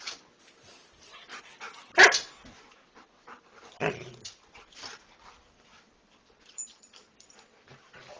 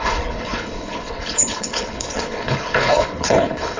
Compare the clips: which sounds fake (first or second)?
second